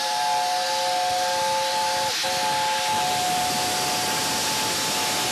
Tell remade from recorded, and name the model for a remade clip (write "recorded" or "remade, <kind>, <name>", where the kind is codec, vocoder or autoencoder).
recorded